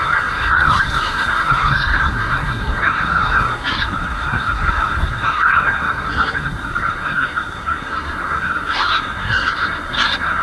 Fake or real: fake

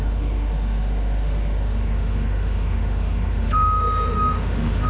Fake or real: fake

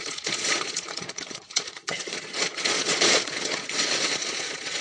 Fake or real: fake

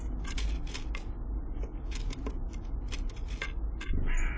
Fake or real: real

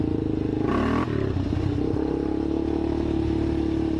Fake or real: real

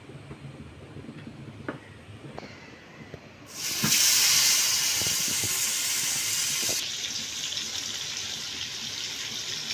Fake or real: real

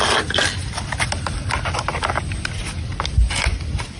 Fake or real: real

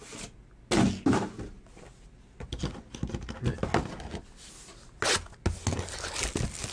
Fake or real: real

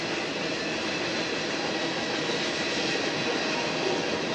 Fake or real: real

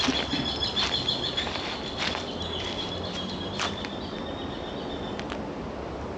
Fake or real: real